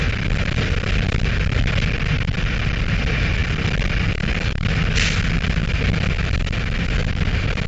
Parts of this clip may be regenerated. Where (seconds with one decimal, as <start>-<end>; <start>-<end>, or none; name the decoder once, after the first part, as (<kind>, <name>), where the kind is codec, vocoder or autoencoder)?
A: 2.3-3.0 (vocoder, BigVGAN v2); 3.4-3.9